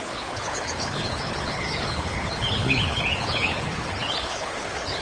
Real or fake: fake